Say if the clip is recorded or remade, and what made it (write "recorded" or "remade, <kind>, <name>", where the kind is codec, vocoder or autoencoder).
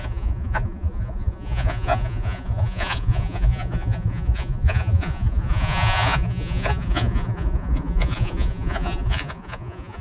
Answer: remade, vocoder, Vocos